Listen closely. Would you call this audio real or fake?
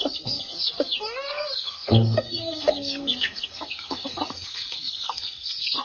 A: fake